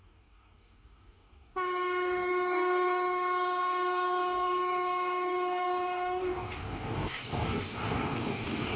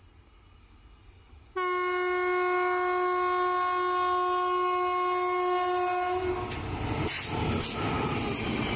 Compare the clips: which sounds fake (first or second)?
first